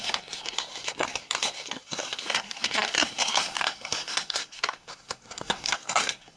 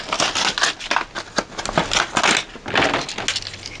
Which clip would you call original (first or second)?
second